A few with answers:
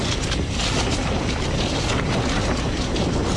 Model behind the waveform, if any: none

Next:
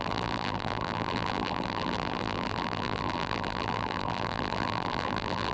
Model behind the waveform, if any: vocoder, BigVGAN v2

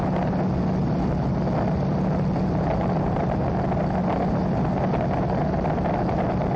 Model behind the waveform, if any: none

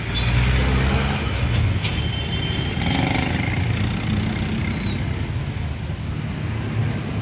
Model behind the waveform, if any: none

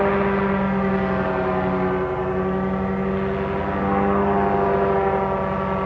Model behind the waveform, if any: none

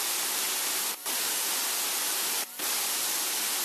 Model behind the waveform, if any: none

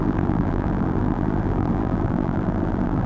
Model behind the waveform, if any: vocoder, BigVGAN v2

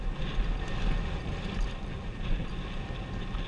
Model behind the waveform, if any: none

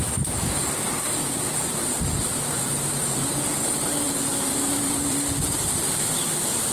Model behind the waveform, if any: vocoder, BigVGAN v2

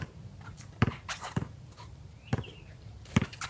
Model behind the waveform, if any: vocoder, BigVGAN v2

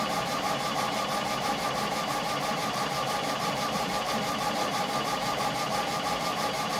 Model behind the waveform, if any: vocoder, BigVGAN v2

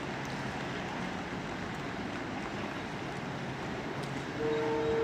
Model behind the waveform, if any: none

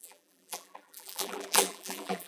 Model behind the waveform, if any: vocoder, BigVGAN v2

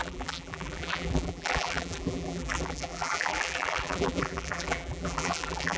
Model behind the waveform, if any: vocoder, BigVGAN v2